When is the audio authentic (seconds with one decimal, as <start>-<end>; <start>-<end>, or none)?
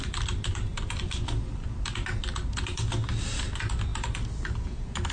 0.0-5.1